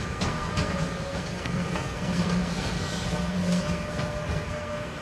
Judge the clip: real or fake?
fake